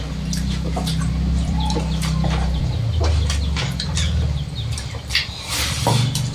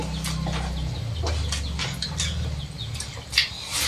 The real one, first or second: second